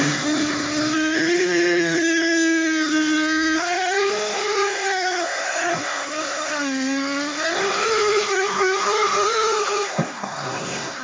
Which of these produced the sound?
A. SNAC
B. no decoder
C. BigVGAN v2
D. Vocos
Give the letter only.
A